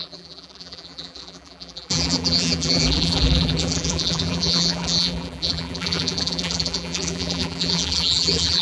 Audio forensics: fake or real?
fake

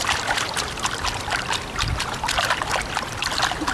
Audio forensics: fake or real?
fake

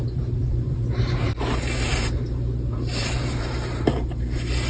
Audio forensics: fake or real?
fake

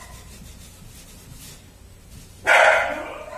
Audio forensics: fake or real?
real